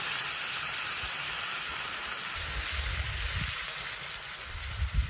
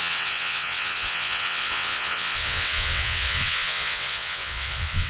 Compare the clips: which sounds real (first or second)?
first